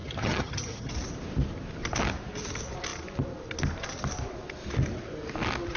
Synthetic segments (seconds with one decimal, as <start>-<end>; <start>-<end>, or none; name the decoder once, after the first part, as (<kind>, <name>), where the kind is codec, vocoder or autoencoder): 0.0-0.9 (vocoder, HiFi-GAN)